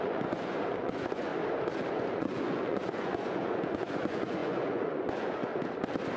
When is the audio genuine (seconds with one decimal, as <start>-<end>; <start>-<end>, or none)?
1.3-1.9; 5.5-6.2